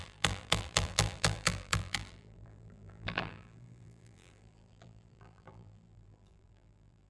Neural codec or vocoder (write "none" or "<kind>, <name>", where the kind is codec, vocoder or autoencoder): vocoder, BigVGAN v2